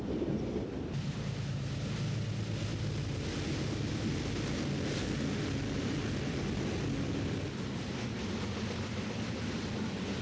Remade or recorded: recorded